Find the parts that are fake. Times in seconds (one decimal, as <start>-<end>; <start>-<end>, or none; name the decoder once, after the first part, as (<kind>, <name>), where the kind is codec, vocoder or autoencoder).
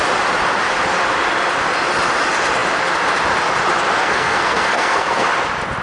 4.0-5.3 (codec, SNAC)